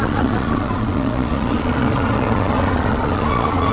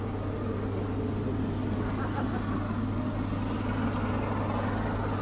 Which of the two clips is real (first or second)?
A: second